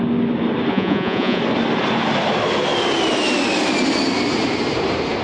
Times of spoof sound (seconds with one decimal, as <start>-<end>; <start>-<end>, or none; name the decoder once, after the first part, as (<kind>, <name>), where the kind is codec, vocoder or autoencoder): 0.7-1.4 (vocoder, Vocos)